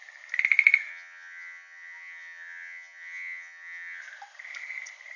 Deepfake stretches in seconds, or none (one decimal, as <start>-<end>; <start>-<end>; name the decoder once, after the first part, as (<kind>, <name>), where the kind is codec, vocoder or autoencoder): 0.9-4.0 (vocoder, HiFi-GAN)

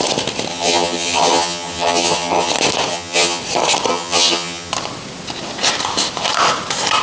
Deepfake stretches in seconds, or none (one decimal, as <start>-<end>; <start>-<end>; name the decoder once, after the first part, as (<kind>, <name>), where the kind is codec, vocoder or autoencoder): 0.5-2.5 (vocoder, HiFi-GAN); 2.9-3.4; 3.9-4.7

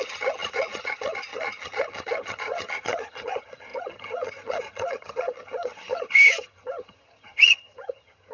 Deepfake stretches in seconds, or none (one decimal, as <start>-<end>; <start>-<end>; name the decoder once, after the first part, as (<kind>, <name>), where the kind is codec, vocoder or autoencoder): 0.0-8.3 (vocoder, HiFi-GAN)